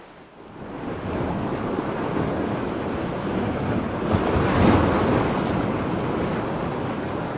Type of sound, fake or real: real